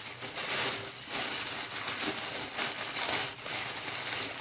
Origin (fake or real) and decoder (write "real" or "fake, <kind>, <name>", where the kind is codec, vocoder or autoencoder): real